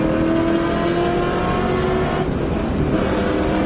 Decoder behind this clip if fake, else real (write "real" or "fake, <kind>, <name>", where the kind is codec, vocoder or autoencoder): real